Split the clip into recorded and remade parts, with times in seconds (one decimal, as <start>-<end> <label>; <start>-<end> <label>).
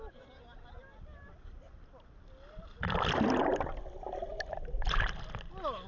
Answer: 0.0-5.9 recorded